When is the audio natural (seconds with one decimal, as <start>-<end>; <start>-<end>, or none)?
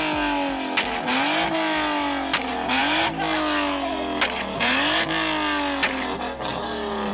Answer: 0.0-7.1